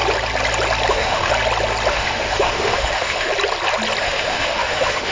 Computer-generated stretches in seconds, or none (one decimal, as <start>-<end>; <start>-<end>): 0.9-1.3; 1.9-3.3; 4.0-5.1